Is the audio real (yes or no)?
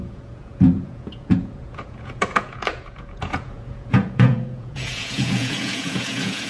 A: no